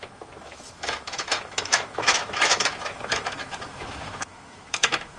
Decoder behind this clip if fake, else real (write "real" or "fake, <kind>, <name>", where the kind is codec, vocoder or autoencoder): fake, autoencoder, DAC-VAE